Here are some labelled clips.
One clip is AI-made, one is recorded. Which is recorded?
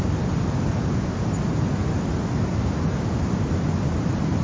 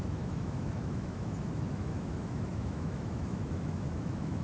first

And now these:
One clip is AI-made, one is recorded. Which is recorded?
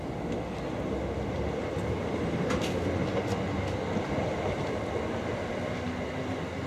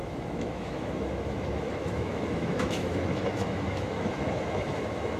first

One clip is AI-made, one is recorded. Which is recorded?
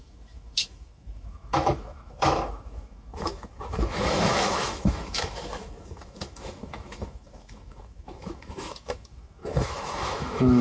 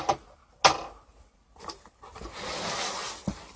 second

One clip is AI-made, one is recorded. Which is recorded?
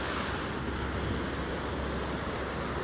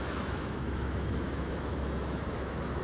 first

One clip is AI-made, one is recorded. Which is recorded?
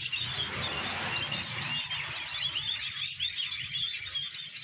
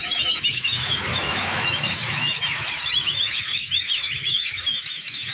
first